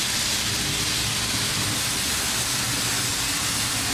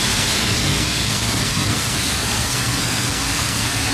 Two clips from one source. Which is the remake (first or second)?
second